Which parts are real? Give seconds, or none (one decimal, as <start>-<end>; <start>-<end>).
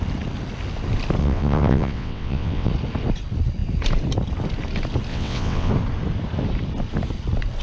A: 0.0-1.2; 2.7-5.1; 5.7-7.6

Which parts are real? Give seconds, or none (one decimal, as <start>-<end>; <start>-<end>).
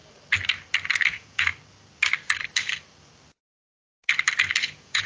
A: 0.0-1.1; 1.5-4.6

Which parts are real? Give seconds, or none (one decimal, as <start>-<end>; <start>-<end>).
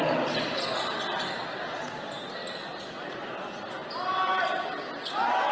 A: 0.0-5.5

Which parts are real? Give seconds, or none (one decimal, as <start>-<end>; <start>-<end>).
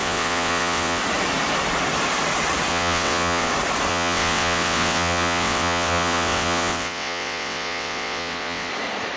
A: 1.0-2.7; 3.5-3.9; 8.7-9.2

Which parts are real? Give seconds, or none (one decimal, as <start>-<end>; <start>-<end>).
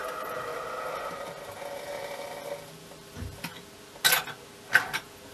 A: 0.0-5.3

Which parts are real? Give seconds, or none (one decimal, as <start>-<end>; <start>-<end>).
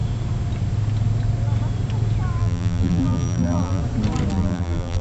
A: 0.0-2.4; 3.8-4.3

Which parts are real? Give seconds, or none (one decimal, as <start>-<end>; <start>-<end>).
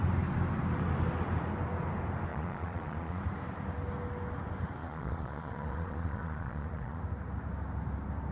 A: 0.0-2.3; 3.2-4.8; 7.0-8.3